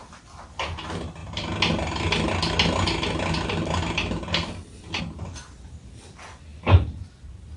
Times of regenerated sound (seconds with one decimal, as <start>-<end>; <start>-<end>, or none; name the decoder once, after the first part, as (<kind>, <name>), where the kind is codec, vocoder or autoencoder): 6.5-7.0 (vocoder, BigVGAN v2)